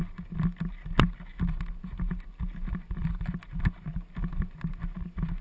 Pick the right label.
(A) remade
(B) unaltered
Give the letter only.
B